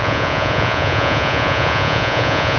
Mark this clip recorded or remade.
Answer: remade